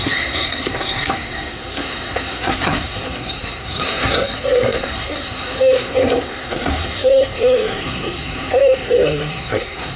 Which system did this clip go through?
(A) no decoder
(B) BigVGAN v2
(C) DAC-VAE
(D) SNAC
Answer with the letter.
D